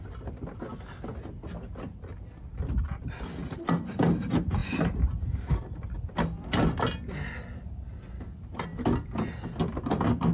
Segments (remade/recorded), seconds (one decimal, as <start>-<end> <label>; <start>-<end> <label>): 0.0-10.3 recorded